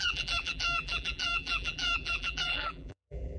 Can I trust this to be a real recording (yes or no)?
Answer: no